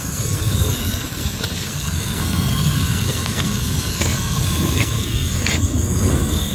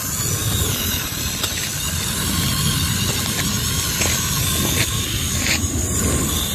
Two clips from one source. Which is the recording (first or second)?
second